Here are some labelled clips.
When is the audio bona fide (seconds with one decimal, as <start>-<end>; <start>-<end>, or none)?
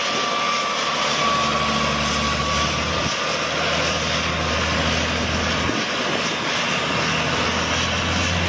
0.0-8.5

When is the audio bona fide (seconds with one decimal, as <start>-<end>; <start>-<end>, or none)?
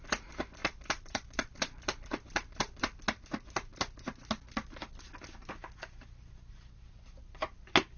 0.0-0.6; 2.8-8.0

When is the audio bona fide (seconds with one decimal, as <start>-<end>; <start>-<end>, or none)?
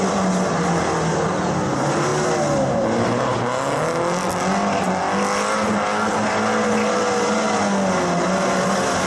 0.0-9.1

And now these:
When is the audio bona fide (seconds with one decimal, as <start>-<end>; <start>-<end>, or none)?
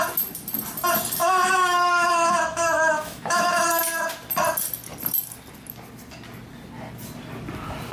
0.0-1.2; 3.8-7.9